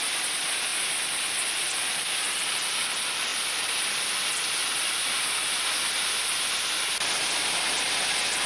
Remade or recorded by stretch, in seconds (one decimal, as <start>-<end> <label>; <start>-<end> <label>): 0.0-8.5 recorded